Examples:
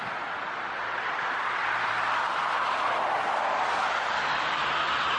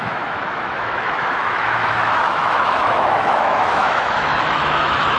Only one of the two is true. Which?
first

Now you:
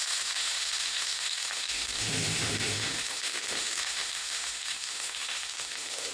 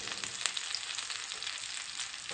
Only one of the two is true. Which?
second